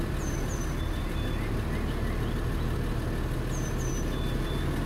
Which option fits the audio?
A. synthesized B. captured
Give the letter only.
B